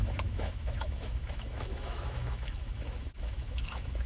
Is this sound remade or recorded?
remade